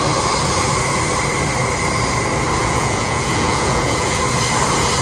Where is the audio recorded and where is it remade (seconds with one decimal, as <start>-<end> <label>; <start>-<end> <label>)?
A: 0.0-2.6 recorded; 2.6-4.2 remade; 4.2-5.0 recorded